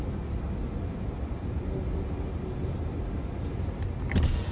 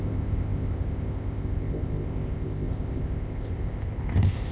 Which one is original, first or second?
first